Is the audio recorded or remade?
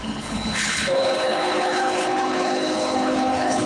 remade